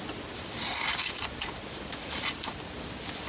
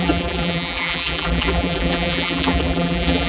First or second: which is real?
first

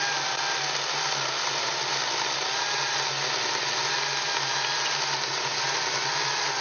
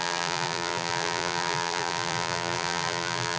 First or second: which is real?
first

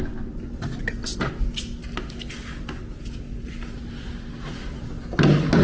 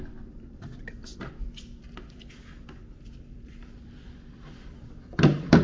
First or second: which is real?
first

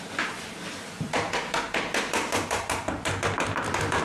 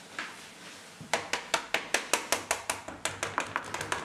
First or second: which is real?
second